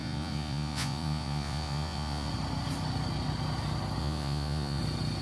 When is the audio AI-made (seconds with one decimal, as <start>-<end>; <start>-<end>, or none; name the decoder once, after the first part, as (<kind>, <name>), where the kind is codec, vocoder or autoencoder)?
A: 0.0-2.3 (vocoder, Vocos); 4.0-4.8